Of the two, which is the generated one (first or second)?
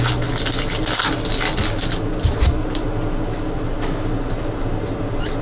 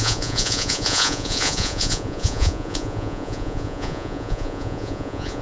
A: second